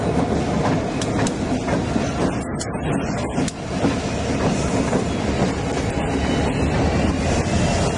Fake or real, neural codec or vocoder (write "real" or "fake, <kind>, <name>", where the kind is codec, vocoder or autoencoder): real